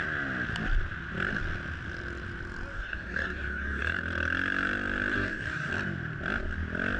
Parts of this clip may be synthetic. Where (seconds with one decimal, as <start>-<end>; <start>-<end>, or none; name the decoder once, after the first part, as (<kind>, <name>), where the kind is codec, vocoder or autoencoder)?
2.7-4.0 (codec, DAC); 5.1-5.7